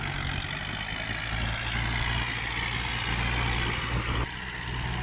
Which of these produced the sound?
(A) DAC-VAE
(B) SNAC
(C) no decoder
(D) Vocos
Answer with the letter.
C